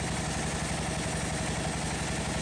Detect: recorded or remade recorded